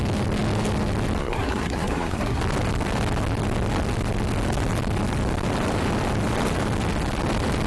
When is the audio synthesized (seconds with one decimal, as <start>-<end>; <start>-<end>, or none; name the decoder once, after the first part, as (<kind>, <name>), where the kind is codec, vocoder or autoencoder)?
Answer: 1.2-2.4 (codec, SNAC)